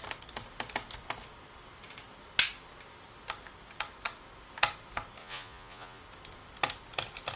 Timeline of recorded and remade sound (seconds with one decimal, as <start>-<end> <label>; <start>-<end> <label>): 0.0-5.2 recorded; 5.2-6.0 remade; 6.0-7.4 recorded